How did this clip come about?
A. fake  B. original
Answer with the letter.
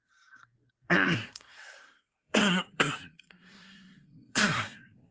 A